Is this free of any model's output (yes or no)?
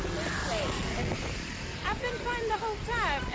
yes